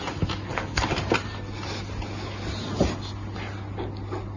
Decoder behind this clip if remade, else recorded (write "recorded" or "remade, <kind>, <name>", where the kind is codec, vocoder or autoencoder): recorded